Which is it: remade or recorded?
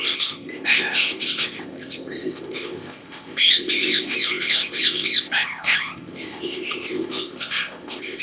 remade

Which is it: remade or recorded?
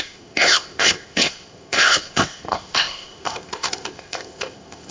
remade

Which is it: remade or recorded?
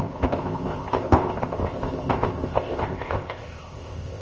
remade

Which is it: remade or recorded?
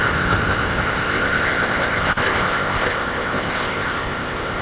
remade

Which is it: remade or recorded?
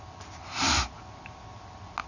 recorded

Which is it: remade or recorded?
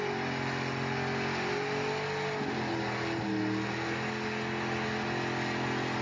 recorded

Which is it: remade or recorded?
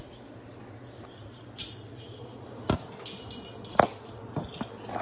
recorded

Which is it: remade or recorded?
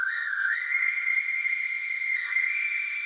remade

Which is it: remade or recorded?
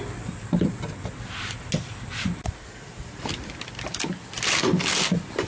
recorded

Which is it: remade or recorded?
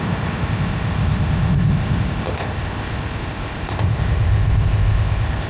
remade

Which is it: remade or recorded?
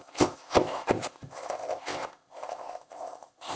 remade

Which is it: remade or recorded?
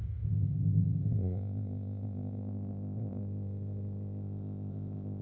remade